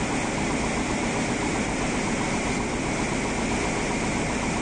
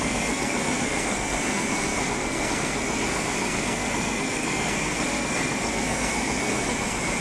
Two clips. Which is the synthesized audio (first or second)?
second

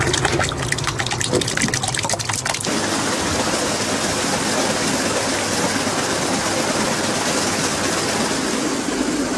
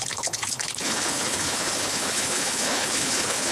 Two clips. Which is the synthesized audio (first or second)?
second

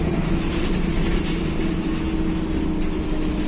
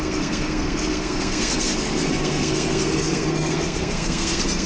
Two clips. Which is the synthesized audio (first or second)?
second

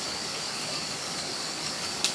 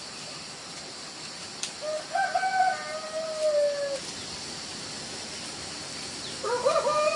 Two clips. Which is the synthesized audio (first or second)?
first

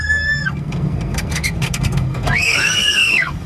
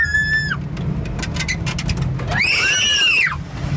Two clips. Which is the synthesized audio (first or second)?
first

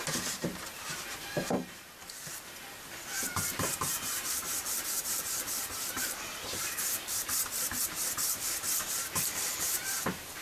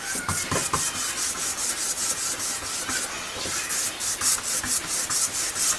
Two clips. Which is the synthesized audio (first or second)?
first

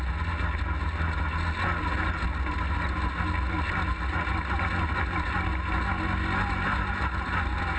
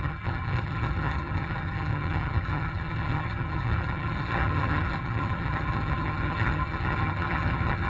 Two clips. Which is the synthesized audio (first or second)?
second